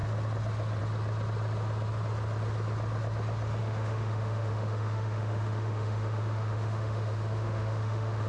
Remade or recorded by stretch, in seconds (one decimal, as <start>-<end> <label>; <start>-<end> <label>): 0.0-3.6 recorded; 3.6-8.3 remade